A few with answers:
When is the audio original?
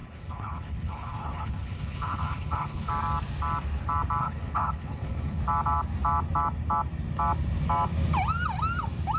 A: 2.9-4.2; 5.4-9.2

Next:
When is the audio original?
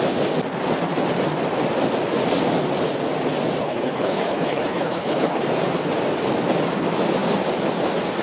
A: 0.0-3.6; 5.4-8.2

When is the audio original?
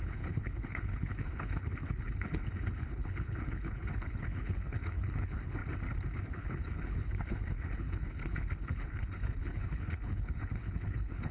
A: 5.6-6.2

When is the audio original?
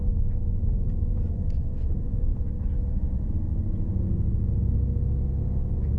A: 0.0-6.0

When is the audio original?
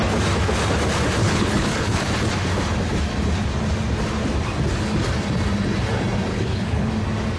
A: 0.0-1.2; 2.1-6.3; 6.9-7.4